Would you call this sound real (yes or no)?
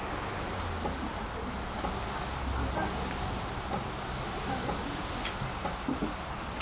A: yes